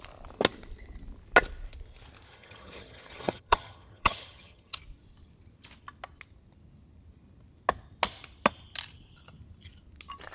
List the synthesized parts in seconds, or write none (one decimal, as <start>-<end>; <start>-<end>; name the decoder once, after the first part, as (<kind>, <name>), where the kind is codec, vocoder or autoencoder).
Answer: 2.3-4.8 (vocoder, HiFi-GAN)